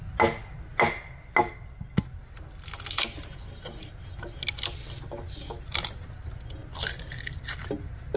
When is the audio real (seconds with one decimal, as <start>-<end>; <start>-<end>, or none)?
0.0-8.2